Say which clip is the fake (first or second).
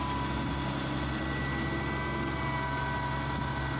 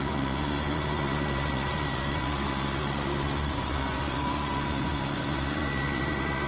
second